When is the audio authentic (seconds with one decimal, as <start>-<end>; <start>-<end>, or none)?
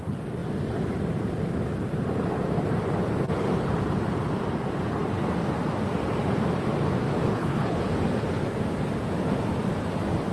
0.0-7.3; 7.8-10.3